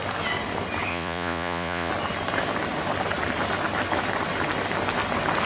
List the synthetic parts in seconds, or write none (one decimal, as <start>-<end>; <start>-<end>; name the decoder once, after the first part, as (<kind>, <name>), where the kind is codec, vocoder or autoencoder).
0.9-1.9 (vocoder, Vocos)